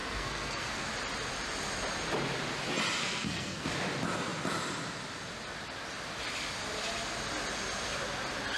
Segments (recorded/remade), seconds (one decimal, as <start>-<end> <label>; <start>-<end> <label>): 0.0-0.9 remade; 0.9-3.0 recorded; 3.0-3.7 remade; 3.7-8.6 recorded